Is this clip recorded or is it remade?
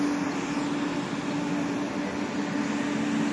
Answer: recorded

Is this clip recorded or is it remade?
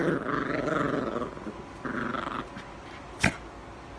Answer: recorded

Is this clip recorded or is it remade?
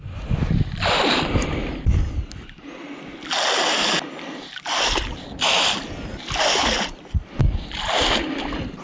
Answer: recorded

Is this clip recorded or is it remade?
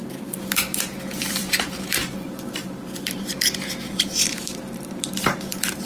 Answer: remade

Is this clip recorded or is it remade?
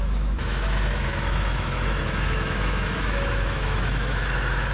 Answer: remade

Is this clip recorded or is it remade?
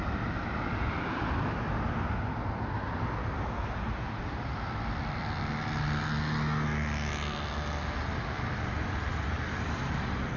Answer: recorded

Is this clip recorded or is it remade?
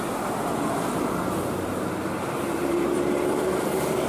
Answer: recorded